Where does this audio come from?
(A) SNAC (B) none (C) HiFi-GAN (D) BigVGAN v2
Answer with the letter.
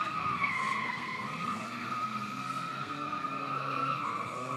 A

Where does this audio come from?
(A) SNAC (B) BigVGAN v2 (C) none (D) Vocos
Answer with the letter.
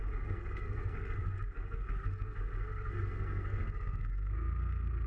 A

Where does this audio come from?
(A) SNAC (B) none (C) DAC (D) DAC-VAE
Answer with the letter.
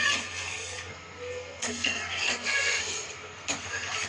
A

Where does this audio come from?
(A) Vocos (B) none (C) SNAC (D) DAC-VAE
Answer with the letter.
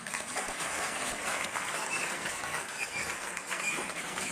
C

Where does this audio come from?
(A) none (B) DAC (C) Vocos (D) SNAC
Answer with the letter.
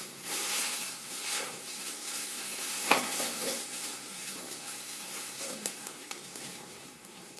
D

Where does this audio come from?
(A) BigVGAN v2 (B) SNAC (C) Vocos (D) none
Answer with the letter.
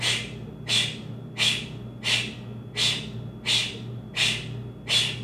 D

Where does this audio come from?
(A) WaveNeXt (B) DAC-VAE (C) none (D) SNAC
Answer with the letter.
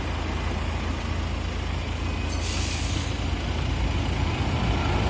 C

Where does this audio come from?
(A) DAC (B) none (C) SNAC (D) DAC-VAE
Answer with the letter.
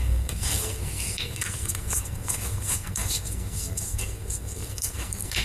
C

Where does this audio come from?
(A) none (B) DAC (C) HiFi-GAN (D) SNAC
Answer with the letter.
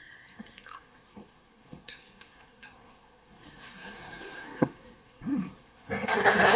D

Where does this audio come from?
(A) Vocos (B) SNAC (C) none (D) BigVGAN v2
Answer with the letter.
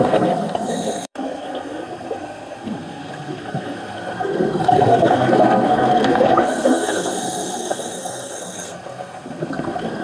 B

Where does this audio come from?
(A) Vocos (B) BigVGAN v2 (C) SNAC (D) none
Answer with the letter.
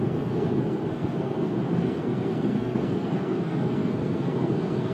C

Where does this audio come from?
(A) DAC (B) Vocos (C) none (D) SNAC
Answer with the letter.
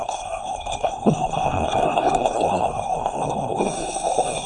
D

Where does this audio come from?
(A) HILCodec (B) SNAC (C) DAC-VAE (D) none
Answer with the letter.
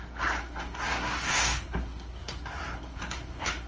B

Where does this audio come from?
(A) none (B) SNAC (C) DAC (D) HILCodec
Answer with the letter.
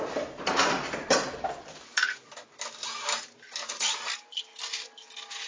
A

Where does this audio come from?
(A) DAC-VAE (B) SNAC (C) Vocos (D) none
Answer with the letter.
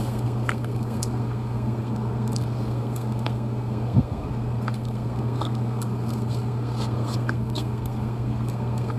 B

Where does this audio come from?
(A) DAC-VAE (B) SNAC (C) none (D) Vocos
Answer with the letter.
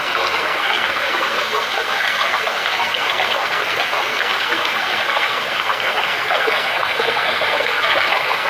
B